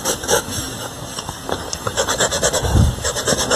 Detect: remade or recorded remade